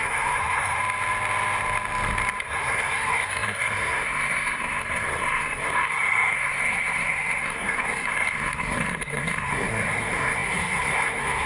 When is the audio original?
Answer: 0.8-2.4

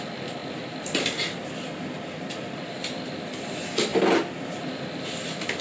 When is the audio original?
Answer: 0.0-0.4; 3.3-3.9

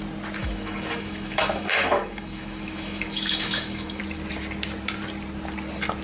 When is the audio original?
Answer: 0.0-0.4; 4.0-6.0

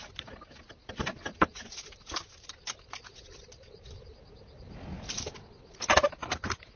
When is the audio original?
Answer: 0.0-6.8

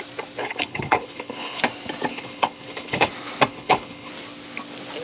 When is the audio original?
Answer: 0.0-0.4; 1.6-2.1; 3.1-3.5; 4.1-5.0

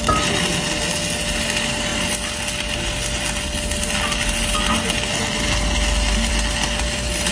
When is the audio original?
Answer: 0.0-7.3

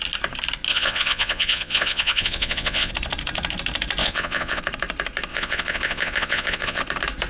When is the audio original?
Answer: 0.0-0.7; 2.9-4.0; 4.6-5.3; 6.8-7.3